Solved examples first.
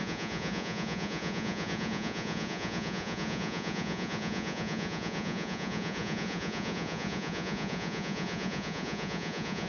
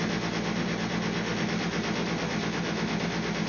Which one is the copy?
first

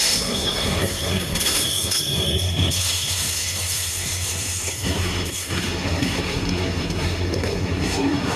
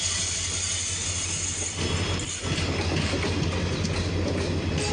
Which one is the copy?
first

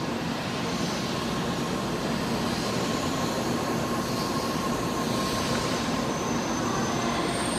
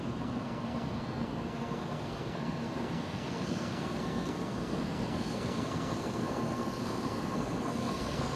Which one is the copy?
second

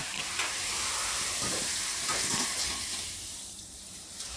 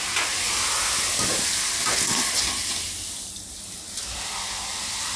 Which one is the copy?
first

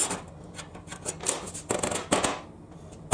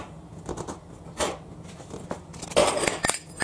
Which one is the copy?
second